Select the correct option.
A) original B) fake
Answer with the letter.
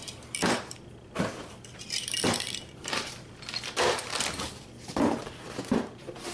B